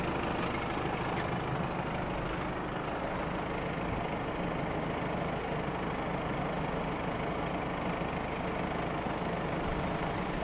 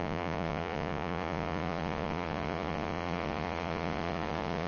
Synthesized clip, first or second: second